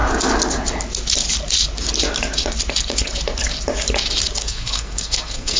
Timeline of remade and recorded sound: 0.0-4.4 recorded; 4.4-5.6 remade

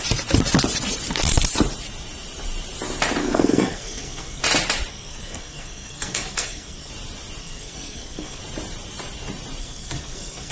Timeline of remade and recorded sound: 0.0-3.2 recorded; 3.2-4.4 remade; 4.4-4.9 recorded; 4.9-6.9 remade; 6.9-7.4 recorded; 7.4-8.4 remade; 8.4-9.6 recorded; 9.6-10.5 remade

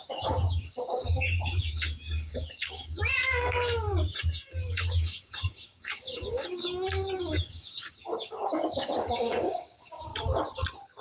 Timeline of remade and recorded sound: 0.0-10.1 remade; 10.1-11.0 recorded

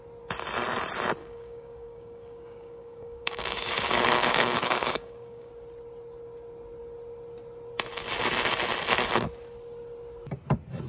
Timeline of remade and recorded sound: 0.0-1.2 recorded; 1.2-5.5 remade; 5.5-10.9 recorded

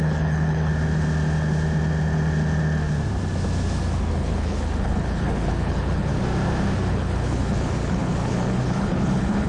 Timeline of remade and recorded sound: 0.0-0.7 remade; 0.7-4.1 recorded; 4.1-6.1 remade; 6.1-6.9 recorded; 6.9-9.5 remade